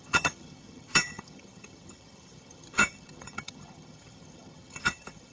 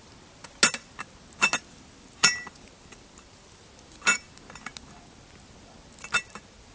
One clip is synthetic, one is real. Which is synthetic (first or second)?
first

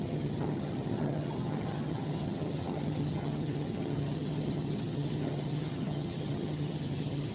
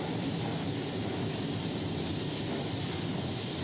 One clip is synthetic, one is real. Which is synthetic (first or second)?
first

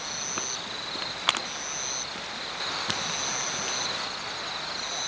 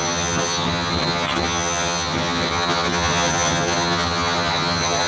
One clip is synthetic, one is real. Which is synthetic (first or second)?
second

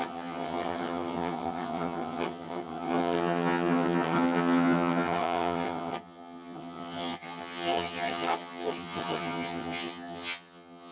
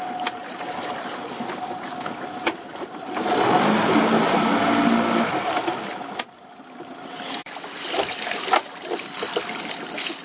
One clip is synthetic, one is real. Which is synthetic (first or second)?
first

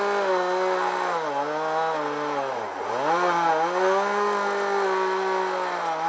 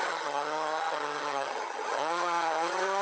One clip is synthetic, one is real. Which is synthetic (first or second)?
second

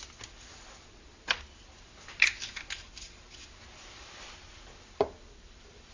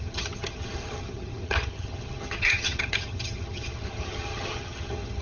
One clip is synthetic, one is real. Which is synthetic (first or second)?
second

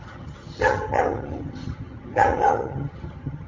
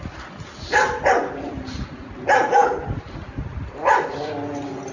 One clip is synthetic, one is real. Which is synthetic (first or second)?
first